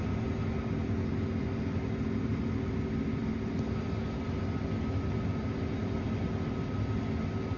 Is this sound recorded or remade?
recorded